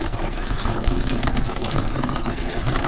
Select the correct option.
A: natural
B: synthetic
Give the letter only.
B